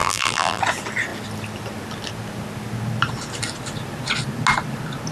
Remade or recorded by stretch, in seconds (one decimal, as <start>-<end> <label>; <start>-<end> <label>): 0.0-0.6 remade; 0.6-5.1 recorded